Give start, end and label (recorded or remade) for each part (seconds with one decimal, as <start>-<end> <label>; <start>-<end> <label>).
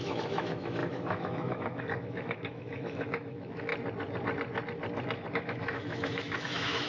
0.0-3.7 remade; 3.7-5.3 recorded; 5.3-6.9 remade